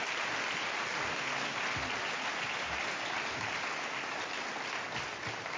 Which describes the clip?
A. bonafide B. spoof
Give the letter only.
A